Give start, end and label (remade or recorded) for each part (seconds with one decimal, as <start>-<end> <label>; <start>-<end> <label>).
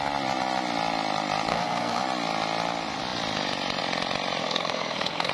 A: 0.0-1.5 recorded; 1.5-2.0 remade; 2.0-4.4 recorded; 4.4-5.3 remade